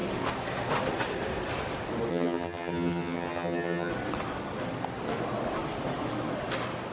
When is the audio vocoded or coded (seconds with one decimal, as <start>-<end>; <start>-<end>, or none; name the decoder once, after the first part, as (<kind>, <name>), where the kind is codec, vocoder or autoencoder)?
2.1-3.9 (vocoder, HiFi-GAN)